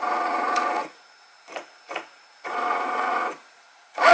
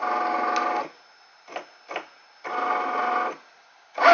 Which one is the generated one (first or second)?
first